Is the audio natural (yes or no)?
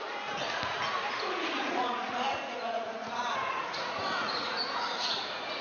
no